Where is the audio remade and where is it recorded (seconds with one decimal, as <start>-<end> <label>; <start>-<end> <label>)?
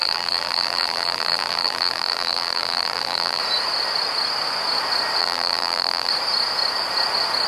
0.0-3.4 remade; 3.4-5.2 recorded; 5.2-6.1 remade; 6.1-7.5 recorded